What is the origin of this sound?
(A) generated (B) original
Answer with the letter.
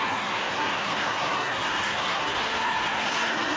A